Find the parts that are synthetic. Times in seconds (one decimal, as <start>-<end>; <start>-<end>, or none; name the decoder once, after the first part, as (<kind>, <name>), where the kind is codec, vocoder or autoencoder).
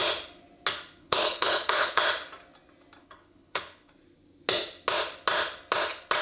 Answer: 1.0-2.0 (codec, HILCodec); 3.0-3.9